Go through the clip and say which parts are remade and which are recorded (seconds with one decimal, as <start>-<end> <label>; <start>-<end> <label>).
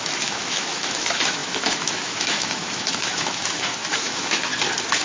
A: 0.0-4.5 remade; 4.5-5.0 recorded